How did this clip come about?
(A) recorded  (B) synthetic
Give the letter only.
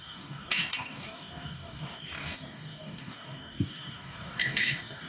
B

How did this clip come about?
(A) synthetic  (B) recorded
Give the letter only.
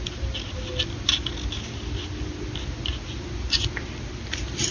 B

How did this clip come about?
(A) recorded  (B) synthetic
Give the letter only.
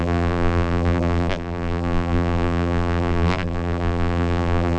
B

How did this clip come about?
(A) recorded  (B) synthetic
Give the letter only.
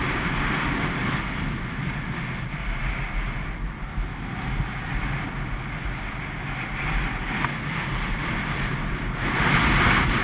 A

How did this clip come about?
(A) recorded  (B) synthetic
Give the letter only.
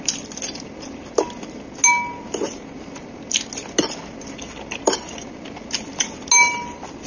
A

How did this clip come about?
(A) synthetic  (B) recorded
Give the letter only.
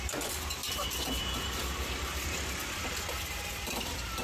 A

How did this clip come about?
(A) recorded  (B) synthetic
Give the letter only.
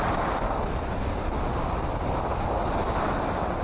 A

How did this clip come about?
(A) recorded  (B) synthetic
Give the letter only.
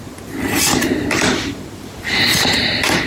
A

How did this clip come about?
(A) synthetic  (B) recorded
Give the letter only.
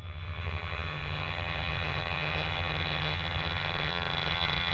A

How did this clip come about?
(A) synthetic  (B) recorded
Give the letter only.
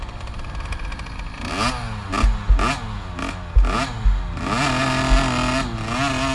B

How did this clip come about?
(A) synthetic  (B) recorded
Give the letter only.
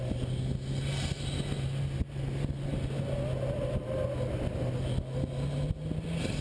B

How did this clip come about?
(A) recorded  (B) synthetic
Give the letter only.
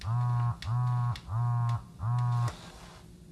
A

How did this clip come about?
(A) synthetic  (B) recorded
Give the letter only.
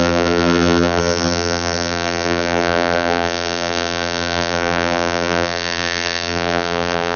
A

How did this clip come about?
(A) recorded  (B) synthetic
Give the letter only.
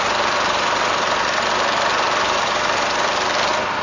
A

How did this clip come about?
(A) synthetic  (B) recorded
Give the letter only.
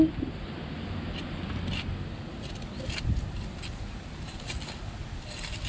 B